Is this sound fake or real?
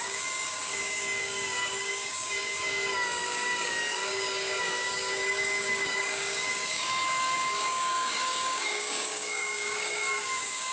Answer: fake